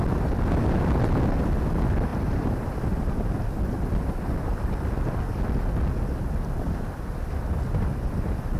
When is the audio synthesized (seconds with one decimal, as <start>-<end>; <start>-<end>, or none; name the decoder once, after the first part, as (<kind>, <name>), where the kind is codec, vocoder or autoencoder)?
none